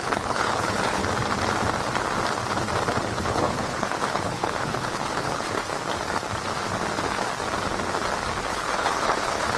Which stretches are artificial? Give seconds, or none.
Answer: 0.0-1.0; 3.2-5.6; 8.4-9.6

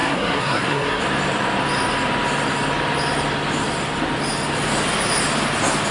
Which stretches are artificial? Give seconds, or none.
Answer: 0.0-1.0

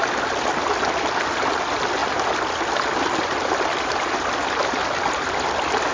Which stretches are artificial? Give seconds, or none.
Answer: none

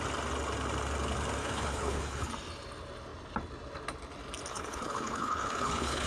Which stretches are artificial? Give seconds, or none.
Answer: 1.4-2.3; 4.5-6.1

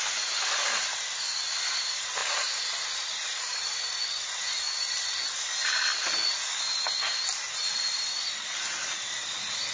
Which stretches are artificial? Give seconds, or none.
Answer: none

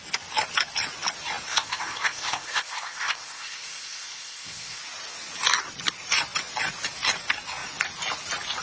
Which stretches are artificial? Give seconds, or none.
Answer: 1.5-4.8

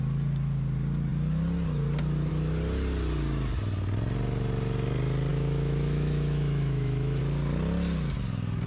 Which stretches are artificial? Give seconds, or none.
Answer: 5.3-7.2